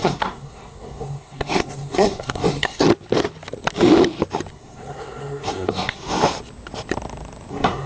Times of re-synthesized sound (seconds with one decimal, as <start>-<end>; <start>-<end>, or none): 0.0-2.9; 4.5-6.2; 7.5-7.9